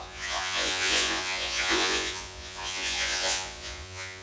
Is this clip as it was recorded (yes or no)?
no